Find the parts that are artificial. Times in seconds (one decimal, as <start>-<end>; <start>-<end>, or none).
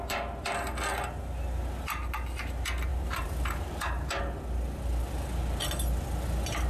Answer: 2.9-4.2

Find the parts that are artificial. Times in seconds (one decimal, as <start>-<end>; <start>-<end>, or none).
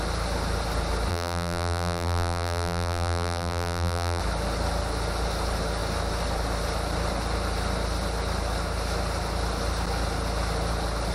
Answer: 1.1-4.2